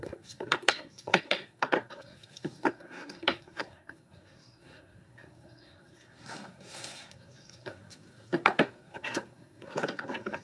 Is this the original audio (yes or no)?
no